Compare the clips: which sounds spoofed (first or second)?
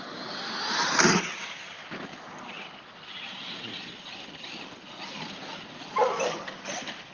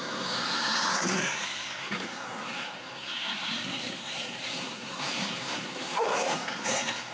second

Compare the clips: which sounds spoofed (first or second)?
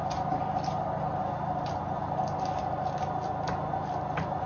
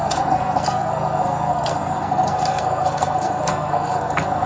second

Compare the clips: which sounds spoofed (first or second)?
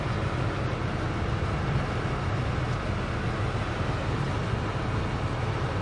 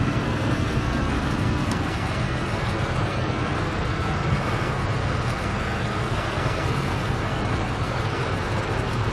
second